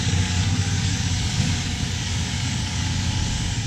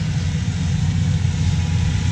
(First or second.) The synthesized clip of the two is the first